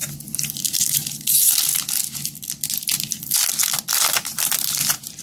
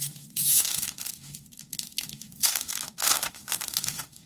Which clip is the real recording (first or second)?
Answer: first